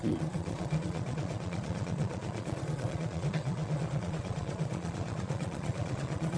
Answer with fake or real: fake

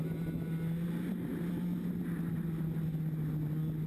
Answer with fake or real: real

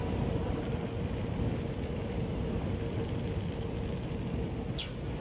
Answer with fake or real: real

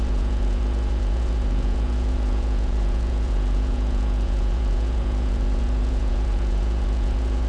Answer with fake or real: fake